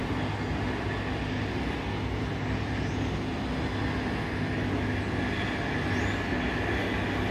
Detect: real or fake real